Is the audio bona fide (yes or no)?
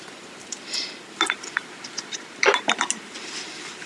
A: yes